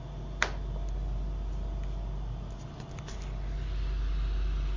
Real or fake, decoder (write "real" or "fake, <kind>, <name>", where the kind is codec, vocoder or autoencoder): real